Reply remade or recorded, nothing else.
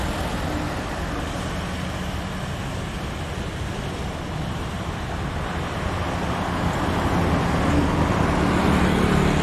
recorded